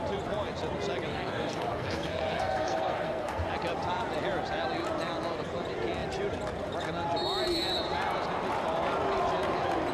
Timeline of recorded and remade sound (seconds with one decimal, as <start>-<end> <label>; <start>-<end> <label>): 0.0-1.1 recorded; 1.1-3.5 remade; 3.5-9.9 recorded